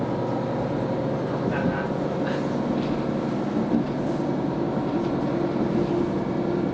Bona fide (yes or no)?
yes